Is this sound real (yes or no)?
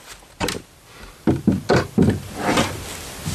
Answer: yes